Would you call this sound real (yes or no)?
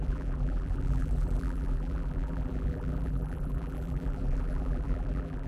no